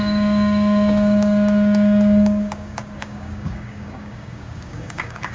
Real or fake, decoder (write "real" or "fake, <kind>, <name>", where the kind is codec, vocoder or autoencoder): fake, codec, DAC